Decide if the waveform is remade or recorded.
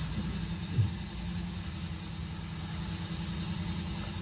recorded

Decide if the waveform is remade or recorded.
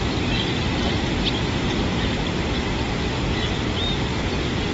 recorded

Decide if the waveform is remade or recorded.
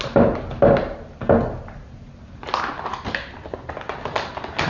recorded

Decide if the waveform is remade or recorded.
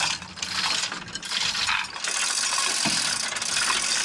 recorded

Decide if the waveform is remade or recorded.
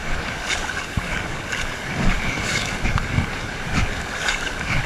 remade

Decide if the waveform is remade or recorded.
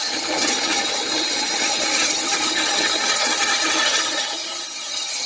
remade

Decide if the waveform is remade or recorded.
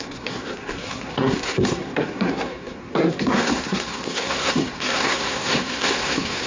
remade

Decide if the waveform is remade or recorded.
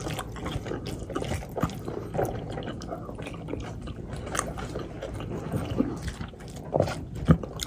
recorded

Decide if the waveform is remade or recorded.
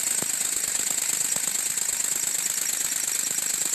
recorded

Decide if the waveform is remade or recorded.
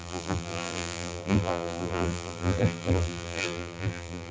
remade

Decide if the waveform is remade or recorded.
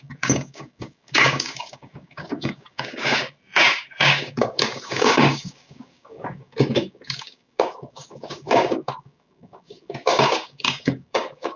remade